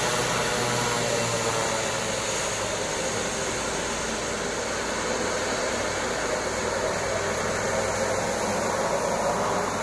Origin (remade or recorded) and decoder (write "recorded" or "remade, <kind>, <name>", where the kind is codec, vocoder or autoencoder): recorded